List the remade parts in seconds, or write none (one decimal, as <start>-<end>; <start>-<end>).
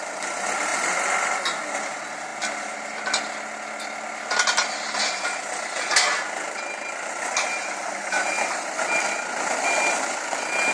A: 0.7-1.9